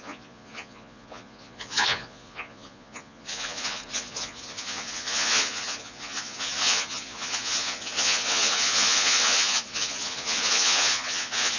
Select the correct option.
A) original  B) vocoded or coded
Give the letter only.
B